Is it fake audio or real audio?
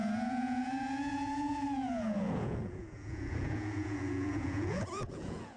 fake